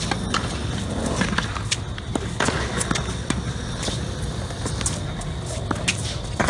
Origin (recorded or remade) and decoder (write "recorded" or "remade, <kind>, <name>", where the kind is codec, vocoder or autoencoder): recorded